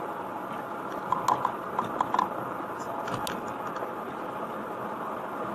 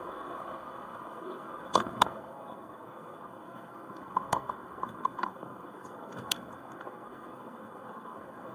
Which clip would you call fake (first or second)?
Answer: second